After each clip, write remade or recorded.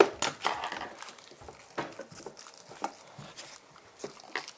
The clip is recorded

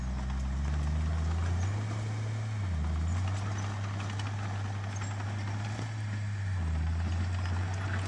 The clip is recorded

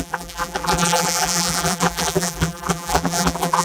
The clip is remade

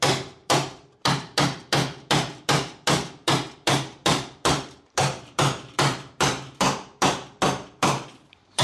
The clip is remade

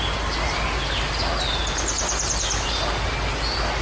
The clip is recorded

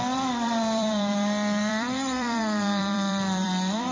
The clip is remade